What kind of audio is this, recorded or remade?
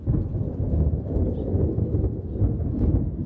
recorded